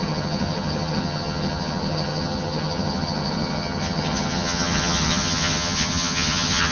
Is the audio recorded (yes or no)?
no